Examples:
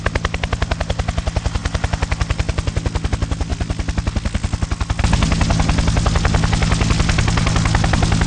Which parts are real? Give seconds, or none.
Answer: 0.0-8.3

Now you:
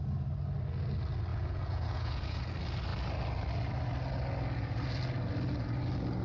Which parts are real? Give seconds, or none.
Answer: 0.0-1.3; 2.4-6.2

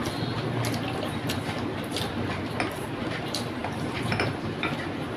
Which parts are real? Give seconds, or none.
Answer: 0.0-5.2

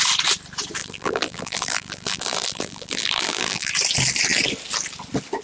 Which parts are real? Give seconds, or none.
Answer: 0.0-0.8; 3.7-5.4

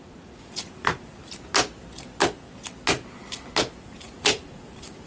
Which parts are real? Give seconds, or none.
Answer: 1.2-3.8

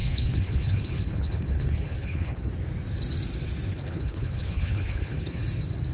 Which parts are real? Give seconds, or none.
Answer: 2.5-3.7; 5.4-5.9

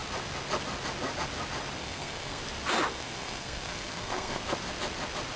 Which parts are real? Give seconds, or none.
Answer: 0.0-1.8; 2.4-2.9; 4.4-5.4